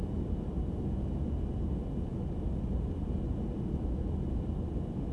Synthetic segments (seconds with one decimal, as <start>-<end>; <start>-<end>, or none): 2.1-2.9